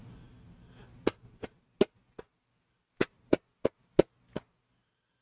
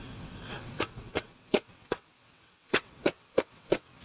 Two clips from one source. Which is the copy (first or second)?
second